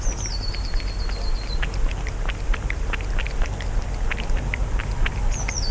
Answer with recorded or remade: recorded